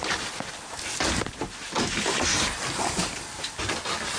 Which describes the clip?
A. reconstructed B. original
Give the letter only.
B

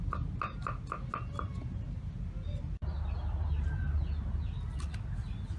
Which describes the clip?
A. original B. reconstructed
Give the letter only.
A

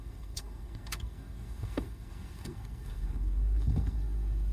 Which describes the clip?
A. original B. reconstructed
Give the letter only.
B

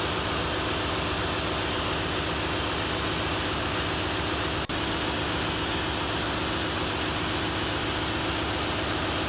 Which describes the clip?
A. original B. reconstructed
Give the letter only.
A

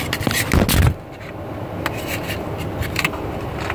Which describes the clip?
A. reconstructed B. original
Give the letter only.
B